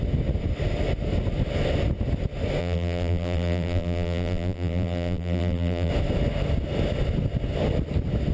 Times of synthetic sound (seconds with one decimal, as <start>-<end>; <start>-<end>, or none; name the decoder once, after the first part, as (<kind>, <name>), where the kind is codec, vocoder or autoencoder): 2.6-5.9 (vocoder, BigVGAN v2)